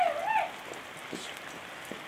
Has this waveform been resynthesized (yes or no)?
no